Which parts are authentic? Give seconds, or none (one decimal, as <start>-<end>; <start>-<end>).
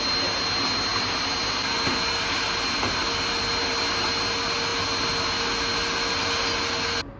0.0-7.2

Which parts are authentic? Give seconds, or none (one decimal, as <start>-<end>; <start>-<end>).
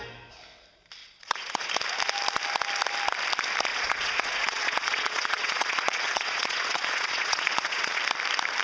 0.0-1.0; 1.7-3.7; 8.0-8.6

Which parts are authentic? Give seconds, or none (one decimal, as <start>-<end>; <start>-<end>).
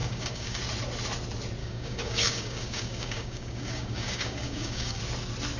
0.6-1.6; 5.0-5.6